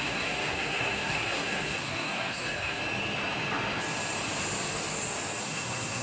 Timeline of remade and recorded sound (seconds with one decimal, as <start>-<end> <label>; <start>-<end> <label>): 0.0-2.8 remade; 2.8-5.4 recorded; 5.4-6.0 remade